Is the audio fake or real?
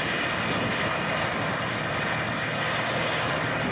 real